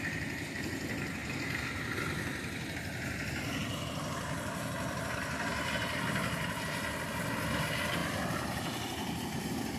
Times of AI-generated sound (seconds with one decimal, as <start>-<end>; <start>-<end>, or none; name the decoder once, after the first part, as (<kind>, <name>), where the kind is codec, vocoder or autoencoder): 8.0-9.8 (vocoder, BigVGAN v2)